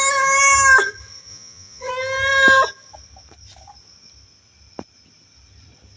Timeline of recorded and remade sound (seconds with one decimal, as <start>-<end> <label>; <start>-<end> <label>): 0.0-1.3 recorded; 1.3-1.9 remade; 1.9-6.0 recorded